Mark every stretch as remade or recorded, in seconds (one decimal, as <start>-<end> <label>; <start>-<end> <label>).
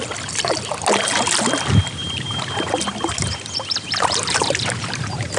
0.0-2.0 recorded; 2.0-5.4 remade